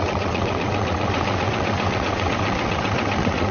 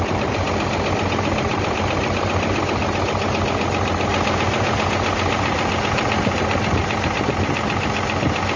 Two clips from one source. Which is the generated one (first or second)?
first